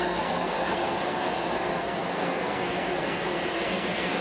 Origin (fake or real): fake